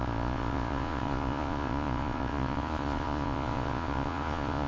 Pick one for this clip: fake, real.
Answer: fake